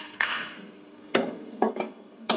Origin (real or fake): fake